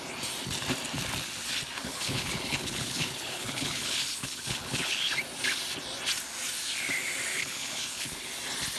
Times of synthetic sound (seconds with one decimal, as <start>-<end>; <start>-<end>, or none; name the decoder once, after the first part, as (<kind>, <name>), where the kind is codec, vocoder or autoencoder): 1.8-5.1 (codec, HILCodec); 7.3-8.3